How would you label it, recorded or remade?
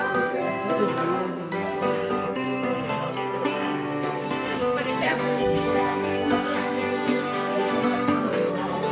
remade